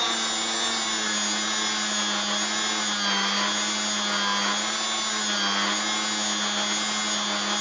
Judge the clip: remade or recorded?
recorded